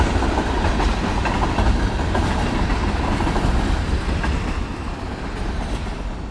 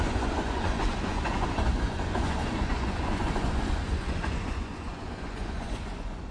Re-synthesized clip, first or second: second